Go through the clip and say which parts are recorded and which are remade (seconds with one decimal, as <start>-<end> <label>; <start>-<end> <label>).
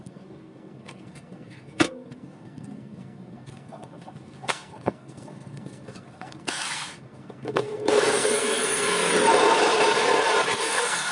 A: 0.0-9.1 remade; 9.1-10.6 recorded; 10.6-11.1 remade